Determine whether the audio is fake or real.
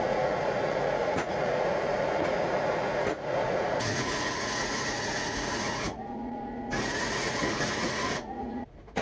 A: fake